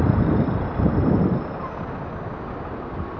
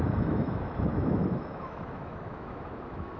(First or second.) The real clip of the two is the first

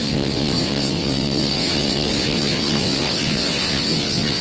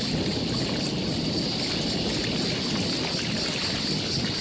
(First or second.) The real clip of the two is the second